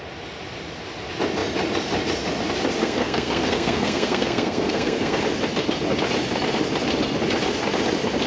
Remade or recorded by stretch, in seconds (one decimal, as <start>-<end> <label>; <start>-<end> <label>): 0.0-2.8 recorded; 2.8-5.2 remade; 5.2-8.3 recorded